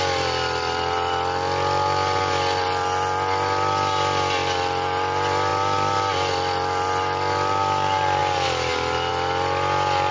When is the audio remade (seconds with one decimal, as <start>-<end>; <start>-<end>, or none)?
none